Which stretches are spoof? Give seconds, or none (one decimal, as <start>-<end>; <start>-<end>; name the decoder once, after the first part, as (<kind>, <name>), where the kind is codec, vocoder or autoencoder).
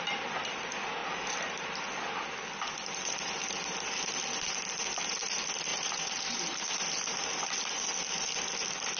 1.0-1.8 (vocoder, BigVGAN v2); 5.7-6.7